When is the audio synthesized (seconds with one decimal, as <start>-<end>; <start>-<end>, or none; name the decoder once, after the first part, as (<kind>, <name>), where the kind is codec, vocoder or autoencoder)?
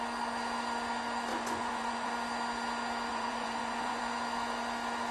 1.3-2.1 (vocoder, Vocos); 3.1-4.0